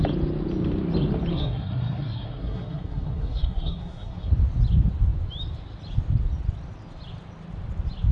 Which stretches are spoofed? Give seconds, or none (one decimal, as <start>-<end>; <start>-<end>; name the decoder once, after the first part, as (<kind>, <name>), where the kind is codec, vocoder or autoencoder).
1.3-4.3 (codec, SNAC)